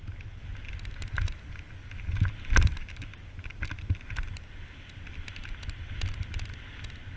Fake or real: real